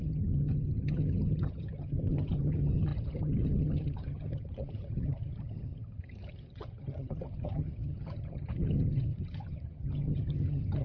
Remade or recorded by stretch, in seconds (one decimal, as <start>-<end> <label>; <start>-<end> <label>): 0.0-10.8 remade